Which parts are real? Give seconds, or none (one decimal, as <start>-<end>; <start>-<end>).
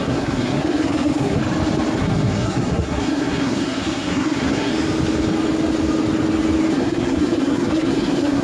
1.4-2.0; 4.7-6.7